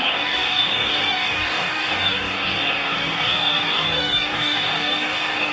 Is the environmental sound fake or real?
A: fake